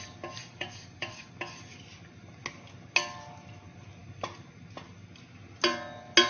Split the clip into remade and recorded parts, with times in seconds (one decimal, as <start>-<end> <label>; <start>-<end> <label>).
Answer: 0.0-0.4 recorded; 0.4-1.1 remade; 1.1-6.3 recorded